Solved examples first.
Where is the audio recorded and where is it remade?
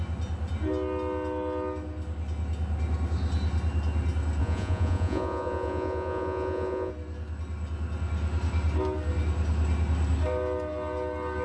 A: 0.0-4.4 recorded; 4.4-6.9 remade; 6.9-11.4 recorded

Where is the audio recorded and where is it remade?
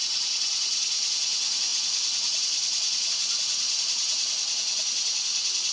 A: 0.0-1.7 remade; 1.7-3.1 recorded; 3.1-4.0 remade; 4.0-4.9 recorded; 4.9-5.7 remade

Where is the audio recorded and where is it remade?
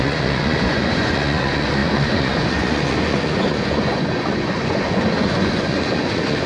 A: 0.0-6.5 remade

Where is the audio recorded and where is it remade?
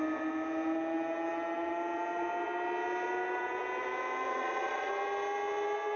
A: 0.0-4.3 recorded; 4.3-4.9 remade; 4.9-6.0 recorded